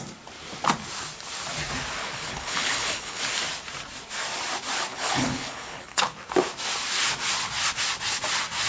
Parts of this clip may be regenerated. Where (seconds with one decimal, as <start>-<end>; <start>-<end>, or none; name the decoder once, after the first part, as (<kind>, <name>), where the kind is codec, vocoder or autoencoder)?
2.0-3.2 (codec, HILCodec); 4.9-6.0